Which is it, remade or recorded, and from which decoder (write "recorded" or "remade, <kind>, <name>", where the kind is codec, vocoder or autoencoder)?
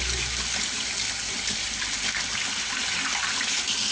recorded